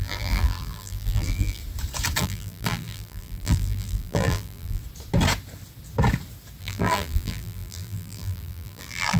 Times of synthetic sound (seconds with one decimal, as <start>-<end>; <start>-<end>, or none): 0.0-1.6; 2.2-4.8; 6.6-9.2

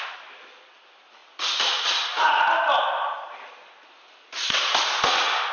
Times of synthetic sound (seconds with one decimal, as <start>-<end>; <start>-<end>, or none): none

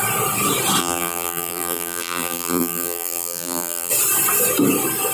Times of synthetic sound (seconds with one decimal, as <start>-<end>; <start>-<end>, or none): 0.8-3.9

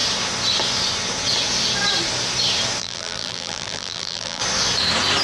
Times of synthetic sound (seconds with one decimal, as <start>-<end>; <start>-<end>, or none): 2.8-4.4

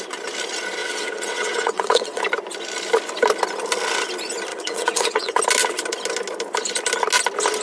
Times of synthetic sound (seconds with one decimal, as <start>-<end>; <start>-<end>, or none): 0.8-2.2; 4.5-5.4

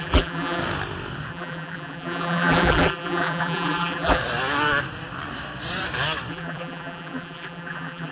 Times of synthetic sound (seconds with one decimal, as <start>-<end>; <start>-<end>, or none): 0.0-0.6; 1.3-4.2; 6.3-8.1

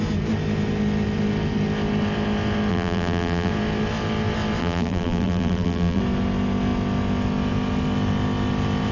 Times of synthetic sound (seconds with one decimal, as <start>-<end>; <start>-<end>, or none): 2.7-3.5; 4.6-6.0